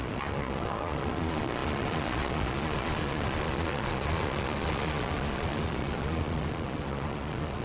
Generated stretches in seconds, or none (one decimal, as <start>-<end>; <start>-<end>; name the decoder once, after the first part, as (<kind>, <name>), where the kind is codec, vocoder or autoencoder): 0.0-7.6 (vocoder, Vocos)